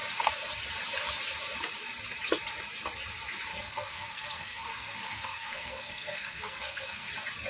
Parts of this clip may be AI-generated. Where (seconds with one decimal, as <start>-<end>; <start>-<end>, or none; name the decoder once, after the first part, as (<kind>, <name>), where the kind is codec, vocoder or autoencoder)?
3.5-7.1 (codec, SNAC)